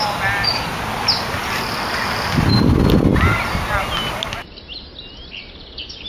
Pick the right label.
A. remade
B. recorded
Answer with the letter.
B